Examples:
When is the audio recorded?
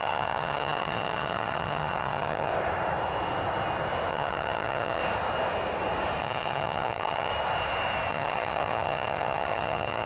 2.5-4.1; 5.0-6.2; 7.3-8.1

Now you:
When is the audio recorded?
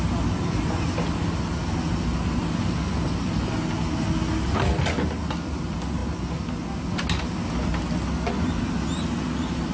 0.0-9.7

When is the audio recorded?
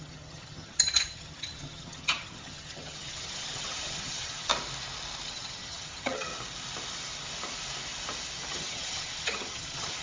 4.5-5.3; 6.3-8.5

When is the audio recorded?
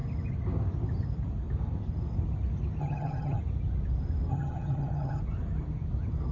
0.0-2.8; 3.4-4.3; 5.2-6.3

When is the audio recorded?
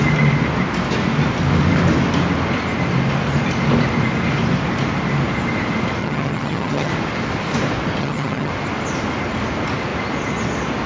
0.0-6.0; 6.9-8.0; 8.5-10.9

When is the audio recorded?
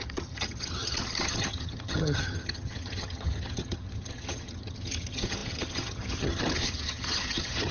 none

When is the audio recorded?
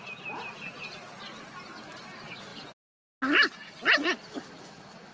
0.0-5.1